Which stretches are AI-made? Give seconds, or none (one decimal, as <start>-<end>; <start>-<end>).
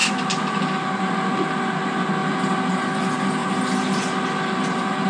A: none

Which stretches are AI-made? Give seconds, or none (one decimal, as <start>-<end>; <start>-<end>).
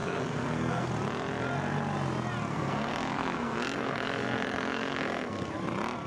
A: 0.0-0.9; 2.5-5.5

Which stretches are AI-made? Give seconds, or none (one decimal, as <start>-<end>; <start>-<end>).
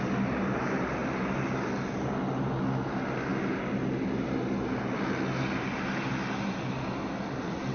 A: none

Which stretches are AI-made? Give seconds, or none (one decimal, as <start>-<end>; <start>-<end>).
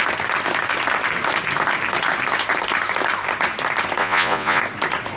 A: 4.0-4.6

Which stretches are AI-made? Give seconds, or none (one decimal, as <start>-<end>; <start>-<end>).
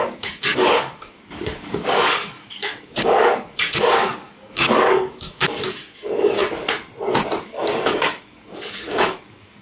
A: 0.0-6.4; 7.4-9.6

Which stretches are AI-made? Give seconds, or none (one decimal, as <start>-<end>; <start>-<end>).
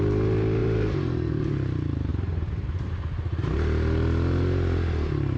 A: 0.6-1.3; 2.1-2.9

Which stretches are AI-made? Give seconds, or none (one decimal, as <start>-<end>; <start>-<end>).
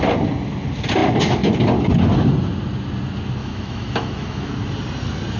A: 3.4-4.5